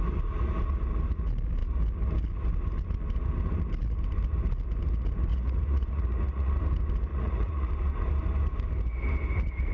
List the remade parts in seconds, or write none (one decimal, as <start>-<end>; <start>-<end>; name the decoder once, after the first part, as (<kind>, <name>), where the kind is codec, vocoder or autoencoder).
5.3-6.5 (vocoder, Vocos); 7.1-7.7